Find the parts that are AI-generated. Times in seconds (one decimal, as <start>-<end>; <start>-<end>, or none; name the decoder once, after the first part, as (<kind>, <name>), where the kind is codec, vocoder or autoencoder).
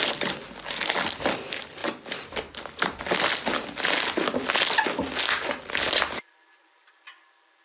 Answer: none